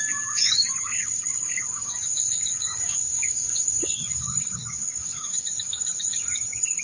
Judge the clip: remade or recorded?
remade